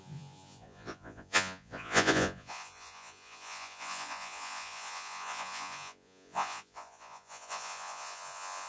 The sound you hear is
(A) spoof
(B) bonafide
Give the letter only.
A